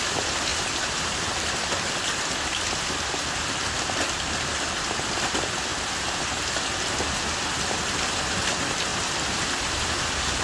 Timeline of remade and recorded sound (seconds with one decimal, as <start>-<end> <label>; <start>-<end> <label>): 0.0-0.5 recorded; 0.5-1.9 remade; 1.9-5.7 recorded; 5.7-6.4 remade; 6.4-10.4 recorded